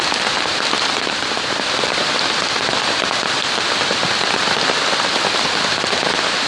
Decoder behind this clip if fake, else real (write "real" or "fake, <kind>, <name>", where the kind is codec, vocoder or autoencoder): fake, vocoder, BigVGAN v2